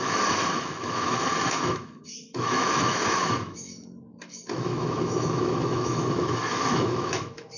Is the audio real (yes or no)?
no